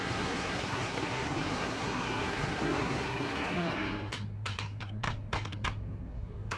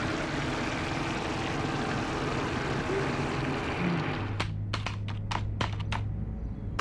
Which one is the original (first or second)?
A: second